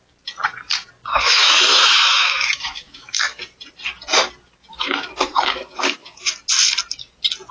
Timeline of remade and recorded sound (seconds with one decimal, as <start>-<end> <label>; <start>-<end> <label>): 0.0-1.1 recorded; 1.1-3.4 remade; 3.4-4.7 recorded; 4.7-6.3 remade; 6.3-7.5 recorded